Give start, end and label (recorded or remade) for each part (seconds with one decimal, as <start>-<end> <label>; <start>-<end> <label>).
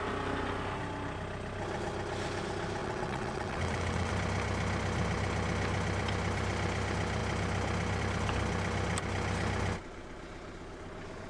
0.0-2.8 recorded; 2.8-4.1 remade; 4.1-11.3 recorded